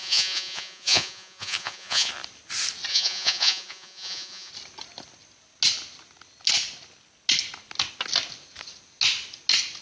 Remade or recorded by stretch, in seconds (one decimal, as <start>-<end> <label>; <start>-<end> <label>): 0.0-2.1 remade; 2.1-2.9 recorded; 2.9-4.5 remade; 4.5-9.8 recorded